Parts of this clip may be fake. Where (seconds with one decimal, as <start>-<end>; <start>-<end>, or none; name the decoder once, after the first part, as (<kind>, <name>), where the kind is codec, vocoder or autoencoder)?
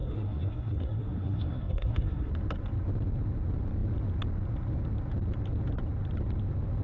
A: 0.0-2.3 (codec, SNAC)